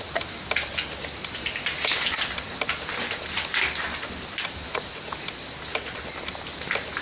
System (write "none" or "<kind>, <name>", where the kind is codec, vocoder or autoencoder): none